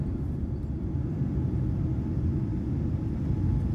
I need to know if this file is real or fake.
real